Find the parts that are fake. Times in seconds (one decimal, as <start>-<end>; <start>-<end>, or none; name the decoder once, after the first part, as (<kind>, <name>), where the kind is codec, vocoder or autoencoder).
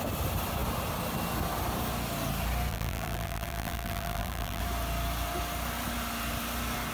2.7-4.6 (vocoder, BigVGAN v2)